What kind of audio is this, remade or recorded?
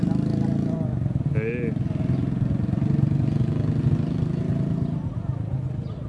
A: recorded